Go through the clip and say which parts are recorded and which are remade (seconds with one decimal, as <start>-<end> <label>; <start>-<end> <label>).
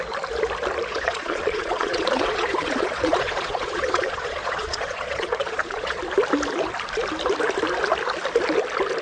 0.0-0.9 recorded; 0.9-6.0 remade; 6.0-9.0 recorded